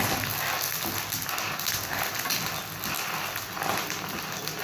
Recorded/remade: recorded